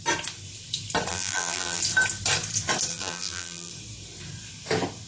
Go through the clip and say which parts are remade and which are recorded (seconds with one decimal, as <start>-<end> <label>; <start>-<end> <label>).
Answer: 0.0-1.1 recorded; 1.1-1.8 remade; 1.8-2.9 recorded; 2.9-3.7 remade; 3.7-5.1 recorded